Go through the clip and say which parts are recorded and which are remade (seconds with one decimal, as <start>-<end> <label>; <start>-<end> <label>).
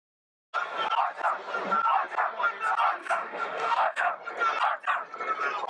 0.0-3.0 recorded; 3.0-4.1 remade; 4.1-5.7 recorded